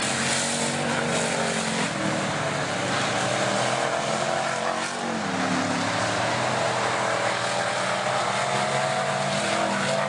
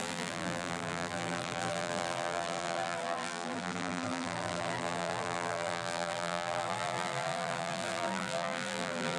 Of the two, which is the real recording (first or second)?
first